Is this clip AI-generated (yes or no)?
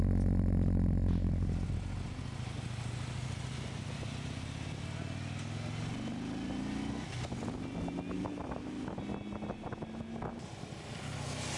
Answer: no